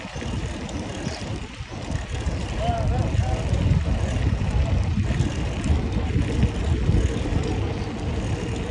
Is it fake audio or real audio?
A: real